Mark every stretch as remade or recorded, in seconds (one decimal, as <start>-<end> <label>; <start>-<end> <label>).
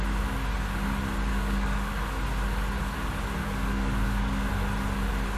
0.0-1.3 recorded; 1.3-1.9 remade; 1.9-3.4 recorded; 3.4-4.5 remade; 4.5-5.4 recorded